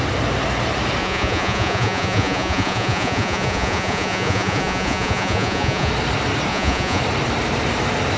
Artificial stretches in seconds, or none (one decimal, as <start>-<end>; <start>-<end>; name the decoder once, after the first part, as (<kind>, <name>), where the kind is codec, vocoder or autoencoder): 1.0-5.9 (vocoder, Vocos); 6.5-7.0